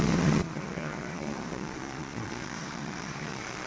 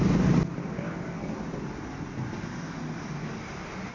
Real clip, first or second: second